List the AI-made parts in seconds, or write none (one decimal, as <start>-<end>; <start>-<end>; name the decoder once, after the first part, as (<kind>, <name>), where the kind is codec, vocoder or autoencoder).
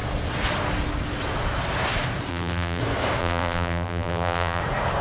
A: 2.3-2.8 (vocoder, BigVGAN v2); 3.2-4.6